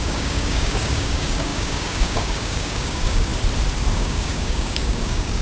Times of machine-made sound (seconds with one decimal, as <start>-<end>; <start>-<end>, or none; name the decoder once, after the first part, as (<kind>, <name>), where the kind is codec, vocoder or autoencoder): 0.0-3.3 (codec, DAC); 3.9-5.4